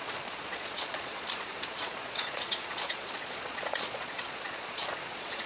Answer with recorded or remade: remade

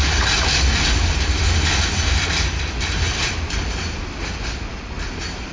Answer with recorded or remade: recorded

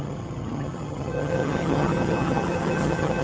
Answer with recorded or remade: remade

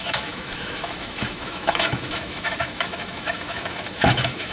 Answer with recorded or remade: remade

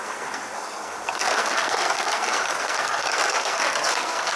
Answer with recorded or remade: remade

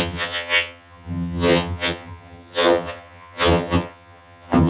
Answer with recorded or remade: remade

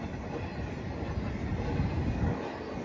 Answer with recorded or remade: recorded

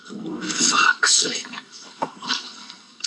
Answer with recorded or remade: remade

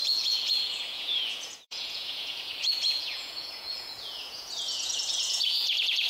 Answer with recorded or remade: remade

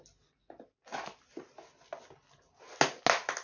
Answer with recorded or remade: recorded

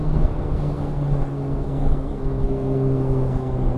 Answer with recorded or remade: remade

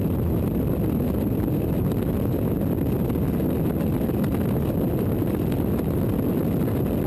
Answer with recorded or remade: recorded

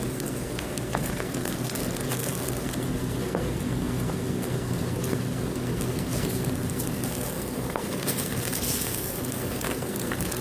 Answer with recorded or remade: remade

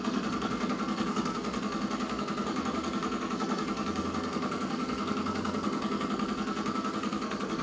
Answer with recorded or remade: remade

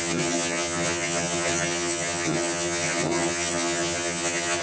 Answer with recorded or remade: remade